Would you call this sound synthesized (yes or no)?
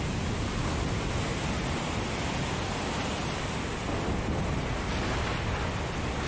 no